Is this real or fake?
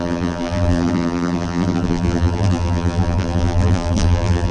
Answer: fake